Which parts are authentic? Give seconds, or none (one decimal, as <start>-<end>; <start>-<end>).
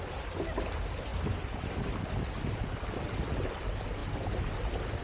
0.0-5.0